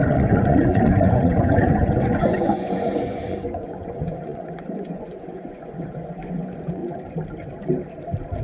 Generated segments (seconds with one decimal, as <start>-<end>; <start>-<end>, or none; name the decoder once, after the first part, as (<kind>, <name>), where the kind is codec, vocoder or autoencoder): 0.0-6.8 (vocoder, Vocos)